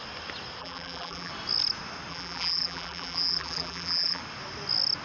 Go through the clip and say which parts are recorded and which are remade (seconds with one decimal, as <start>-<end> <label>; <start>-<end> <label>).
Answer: 0.0-0.6 recorded; 0.6-1.3 remade; 1.3-2.1 recorded; 2.1-4.2 remade; 4.2-5.0 recorded